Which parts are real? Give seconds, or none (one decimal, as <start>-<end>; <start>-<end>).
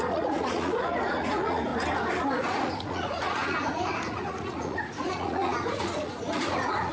1.7-2.2